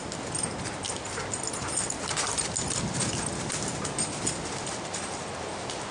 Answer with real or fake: real